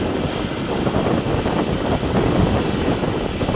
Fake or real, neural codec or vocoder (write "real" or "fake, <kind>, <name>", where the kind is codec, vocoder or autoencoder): real